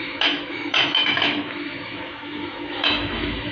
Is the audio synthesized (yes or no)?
yes